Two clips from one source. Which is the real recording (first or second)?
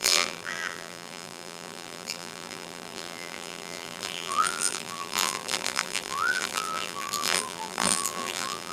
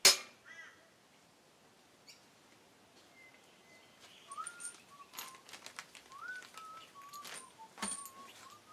second